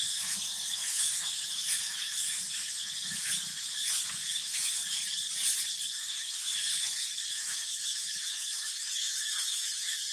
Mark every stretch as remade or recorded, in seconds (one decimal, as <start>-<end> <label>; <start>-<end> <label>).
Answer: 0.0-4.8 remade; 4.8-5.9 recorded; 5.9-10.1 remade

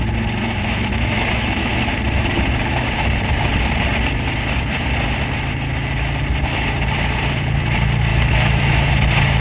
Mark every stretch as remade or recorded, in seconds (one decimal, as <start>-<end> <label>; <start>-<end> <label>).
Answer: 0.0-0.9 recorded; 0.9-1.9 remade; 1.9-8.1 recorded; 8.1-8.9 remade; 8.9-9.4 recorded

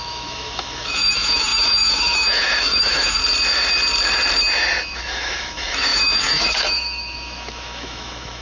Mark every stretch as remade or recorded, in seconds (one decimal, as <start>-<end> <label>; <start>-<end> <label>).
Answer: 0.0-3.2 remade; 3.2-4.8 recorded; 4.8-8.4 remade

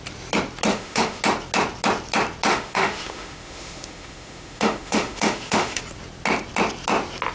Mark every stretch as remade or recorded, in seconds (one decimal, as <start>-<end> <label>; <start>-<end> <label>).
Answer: 0.0-0.7 recorded; 0.7-1.2 remade; 1.2-2.5 recorded; 2.5-5.8 remade; 5.8-7.3 recorded

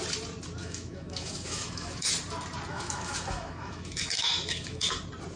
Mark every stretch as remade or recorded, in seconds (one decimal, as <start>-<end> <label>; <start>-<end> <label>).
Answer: 0.0-0.6 recorded; 0.6-2.1 remade; 2.1-2.7 recorded; 2.7-5.0 remade; 5.0-5.4 recorded

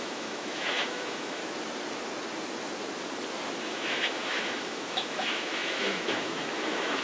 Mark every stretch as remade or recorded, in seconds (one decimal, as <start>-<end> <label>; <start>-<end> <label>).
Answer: 0.0-1.4 remade; 1.4-3.6 recorded; 3.6-7.0 remade

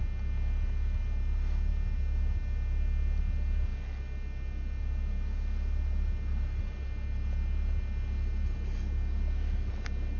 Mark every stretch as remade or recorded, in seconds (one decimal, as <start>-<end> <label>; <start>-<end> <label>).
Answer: 0.0-10.2 recorded

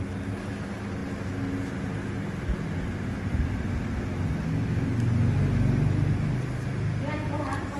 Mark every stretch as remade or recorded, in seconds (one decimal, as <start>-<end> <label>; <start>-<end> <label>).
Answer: 0.0-7.8 recorded